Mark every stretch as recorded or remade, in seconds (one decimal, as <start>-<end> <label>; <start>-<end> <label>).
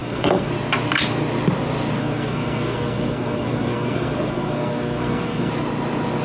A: 0.0-0.5 remade; 0.5-2.0 recorded; 2.0-5.5 remade; 5.5-6.2 recorded